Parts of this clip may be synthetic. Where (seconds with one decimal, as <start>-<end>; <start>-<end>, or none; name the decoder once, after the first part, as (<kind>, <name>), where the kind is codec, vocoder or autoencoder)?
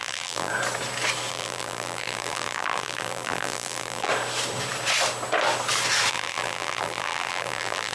0.0-0.5 (vocoder, BigVGAN v2); 1.3-4.1; 6.1-7.9